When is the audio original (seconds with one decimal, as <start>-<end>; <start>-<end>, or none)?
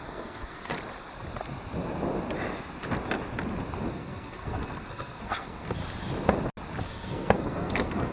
0.7-3.9; 5.8-6.8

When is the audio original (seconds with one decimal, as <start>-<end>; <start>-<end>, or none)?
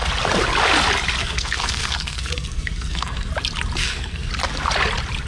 0.0-1.2; 3.3-3.8; 4.3-5.3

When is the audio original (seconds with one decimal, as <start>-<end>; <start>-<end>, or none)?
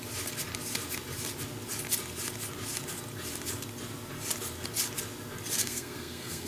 0.0-5.6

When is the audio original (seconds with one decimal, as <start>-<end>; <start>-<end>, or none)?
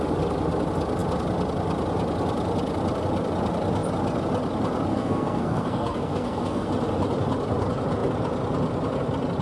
0.0-4.9; 6.7-9.4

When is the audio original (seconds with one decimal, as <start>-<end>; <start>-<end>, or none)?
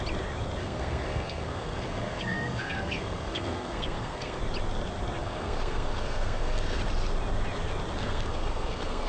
0.0-0.6; 4.4-5.2; 6.8-8.0